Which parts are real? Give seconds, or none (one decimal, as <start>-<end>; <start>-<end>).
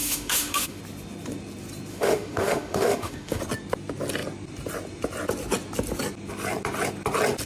0.8-1.9; 3.4-7.5